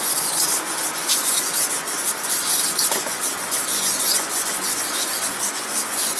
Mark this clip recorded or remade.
remade